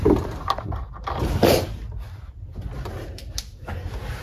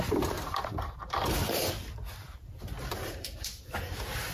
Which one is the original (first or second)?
first